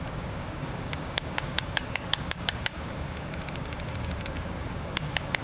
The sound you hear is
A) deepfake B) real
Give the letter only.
A